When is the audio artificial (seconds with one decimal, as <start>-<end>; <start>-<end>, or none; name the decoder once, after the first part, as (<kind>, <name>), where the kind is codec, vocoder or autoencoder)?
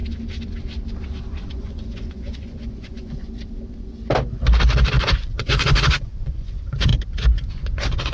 1.5-3.2 (vocoder, Vocos); 5.0-6.9; 7.5-8.1